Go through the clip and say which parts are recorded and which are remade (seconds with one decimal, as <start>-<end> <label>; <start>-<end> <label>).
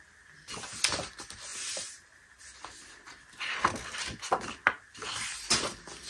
0.0-1.5 recorded; 1.5-2.4 remade; 2.4-6.1 recorded